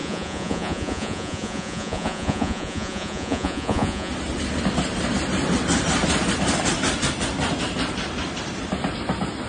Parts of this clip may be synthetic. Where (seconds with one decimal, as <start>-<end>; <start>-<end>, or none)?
0.0-4.1